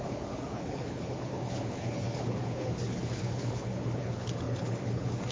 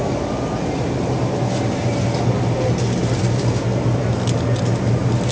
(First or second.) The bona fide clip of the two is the second